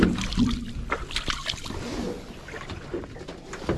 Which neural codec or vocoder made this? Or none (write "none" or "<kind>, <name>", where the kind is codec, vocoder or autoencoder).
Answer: none